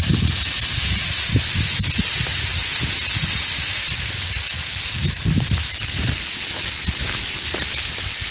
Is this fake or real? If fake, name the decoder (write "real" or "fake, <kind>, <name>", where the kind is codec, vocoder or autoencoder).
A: real